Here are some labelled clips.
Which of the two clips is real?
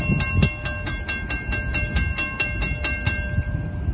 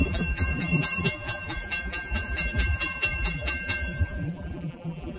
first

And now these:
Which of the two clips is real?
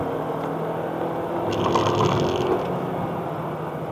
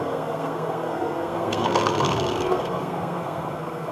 first